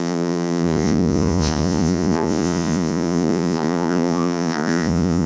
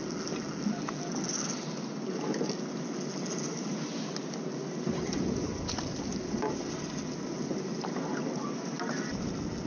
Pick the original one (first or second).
second